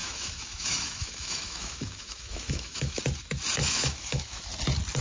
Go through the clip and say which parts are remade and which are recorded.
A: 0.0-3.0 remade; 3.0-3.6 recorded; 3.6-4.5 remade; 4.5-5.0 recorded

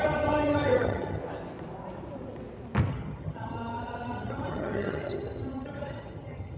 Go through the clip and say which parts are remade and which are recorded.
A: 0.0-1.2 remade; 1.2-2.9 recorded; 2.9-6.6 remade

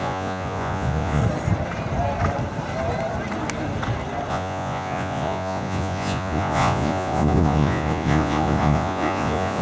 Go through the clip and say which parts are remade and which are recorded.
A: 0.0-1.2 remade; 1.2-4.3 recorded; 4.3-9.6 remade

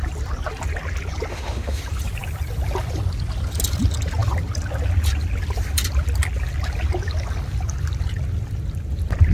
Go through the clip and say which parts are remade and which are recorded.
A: 0.0-1.3 recorded; 1.3-1.8 remade; 1.8-9.3 recorded

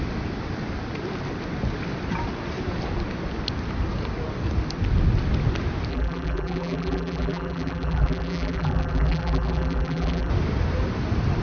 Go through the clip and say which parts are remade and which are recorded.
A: 0.0-5.9 recorded; 5.9-10.3 remade; 10.3-11.4 recorded

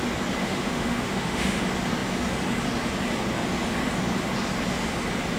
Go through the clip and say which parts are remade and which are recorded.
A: 0.0-0.4 recorded; 0.4-1.6 remade; 1.6-5.4 recorded